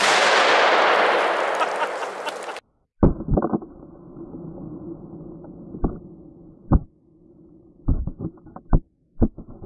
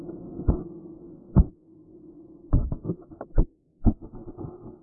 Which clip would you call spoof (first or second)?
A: second